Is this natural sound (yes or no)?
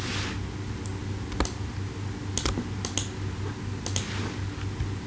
yes